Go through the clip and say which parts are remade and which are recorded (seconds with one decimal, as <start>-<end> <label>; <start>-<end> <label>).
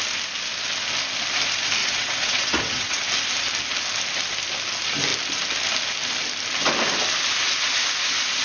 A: 0.0-1.8 recorded; 1.8-3.1 remade; 3.1-8.4 recorded